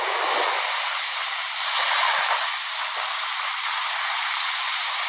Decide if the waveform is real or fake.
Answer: real